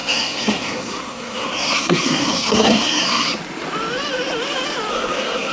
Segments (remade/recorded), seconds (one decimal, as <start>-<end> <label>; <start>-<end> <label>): 0.0-3.4 remade; 3.4-4.9 recorded; 4.9-5.5 remade